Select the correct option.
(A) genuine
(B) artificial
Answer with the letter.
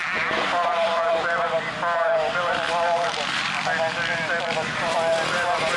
B